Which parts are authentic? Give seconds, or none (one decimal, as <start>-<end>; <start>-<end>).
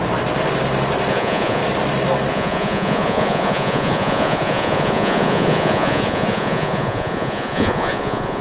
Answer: 0.0-1.1; 1.6-2.3